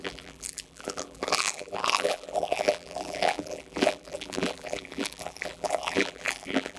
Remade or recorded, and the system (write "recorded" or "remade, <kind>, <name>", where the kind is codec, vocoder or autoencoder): remade, vocoder, BigVGAN v2